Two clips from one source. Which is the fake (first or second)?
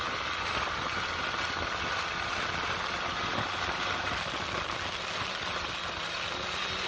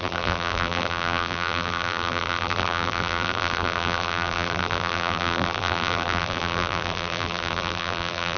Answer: second